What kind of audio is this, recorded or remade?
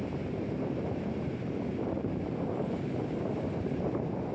remade